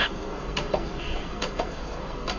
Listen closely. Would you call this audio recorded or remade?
remade